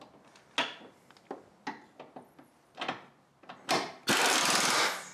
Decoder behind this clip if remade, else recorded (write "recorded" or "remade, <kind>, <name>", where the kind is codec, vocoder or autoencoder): recorded